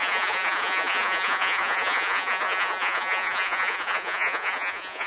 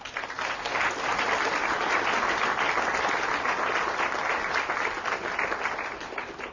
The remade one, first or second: first